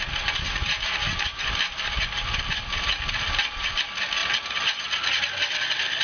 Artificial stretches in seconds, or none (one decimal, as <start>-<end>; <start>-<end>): none